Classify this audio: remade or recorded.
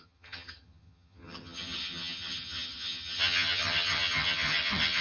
remade